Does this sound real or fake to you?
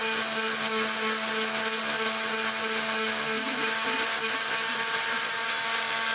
real